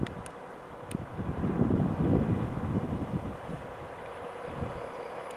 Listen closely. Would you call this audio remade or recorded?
recorded